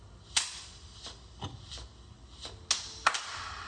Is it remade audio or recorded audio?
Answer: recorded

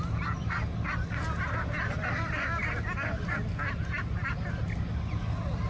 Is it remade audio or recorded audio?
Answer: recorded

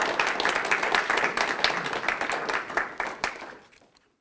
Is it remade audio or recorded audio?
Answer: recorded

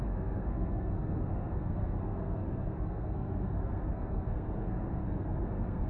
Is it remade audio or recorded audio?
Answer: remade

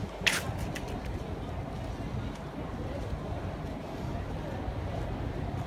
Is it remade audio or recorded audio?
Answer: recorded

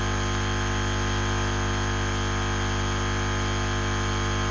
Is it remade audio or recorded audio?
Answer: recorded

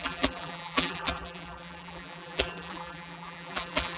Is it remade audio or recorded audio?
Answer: remade